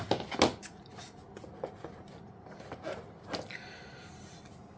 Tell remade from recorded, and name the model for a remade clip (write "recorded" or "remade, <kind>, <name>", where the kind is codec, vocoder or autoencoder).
recorded